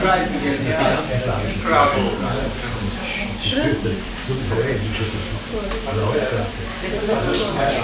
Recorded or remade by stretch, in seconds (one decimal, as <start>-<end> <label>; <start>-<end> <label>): 0.0-7.8 recorded